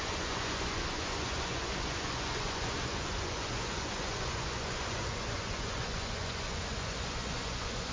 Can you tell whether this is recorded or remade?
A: remade